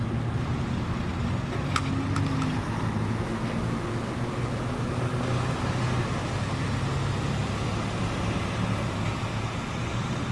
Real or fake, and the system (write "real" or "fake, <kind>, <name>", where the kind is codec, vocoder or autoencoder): real